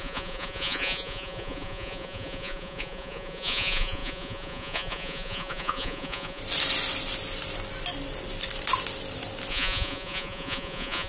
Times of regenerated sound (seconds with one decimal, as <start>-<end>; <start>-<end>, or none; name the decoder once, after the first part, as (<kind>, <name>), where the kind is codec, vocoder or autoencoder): 0.0-6.4 (vocoder, Vocos); 9.5-11.1